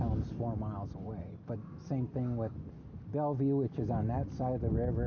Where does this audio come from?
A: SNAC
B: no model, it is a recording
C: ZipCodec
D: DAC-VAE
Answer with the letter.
B